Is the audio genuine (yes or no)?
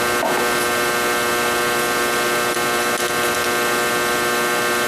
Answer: yes